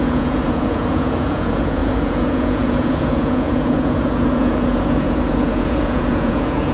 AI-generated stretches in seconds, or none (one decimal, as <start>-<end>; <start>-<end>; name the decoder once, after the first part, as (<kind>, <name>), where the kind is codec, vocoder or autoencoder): 0.0-6.7 (vocoder, Vocos)